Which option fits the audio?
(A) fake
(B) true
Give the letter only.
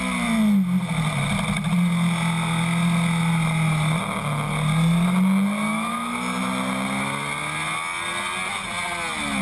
B